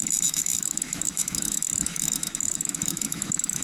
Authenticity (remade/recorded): remade